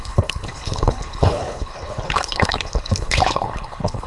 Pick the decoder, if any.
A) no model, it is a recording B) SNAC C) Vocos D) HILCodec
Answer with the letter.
D